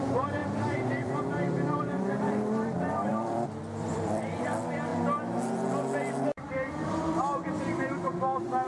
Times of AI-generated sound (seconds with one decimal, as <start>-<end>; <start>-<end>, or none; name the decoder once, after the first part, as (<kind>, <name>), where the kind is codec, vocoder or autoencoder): 0.0-4.9 (vocoder, BigVGAN v2); 6.3-8.7